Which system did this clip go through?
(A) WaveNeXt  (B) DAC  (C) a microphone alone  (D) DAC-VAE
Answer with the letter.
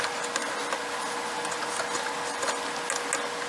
C